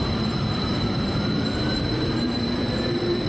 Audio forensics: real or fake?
fake